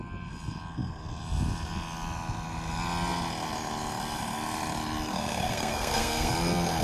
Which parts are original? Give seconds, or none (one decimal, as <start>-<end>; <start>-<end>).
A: 0.0-5.1; 6.3-6.8